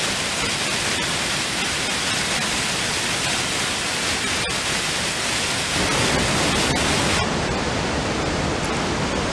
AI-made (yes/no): no